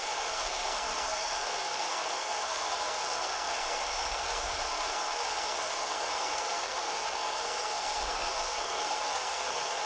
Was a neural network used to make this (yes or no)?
yes